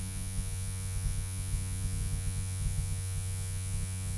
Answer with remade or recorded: remade